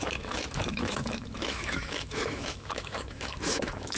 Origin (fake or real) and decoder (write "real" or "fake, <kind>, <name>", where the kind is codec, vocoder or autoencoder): fake, autoencoder, DAC-VAE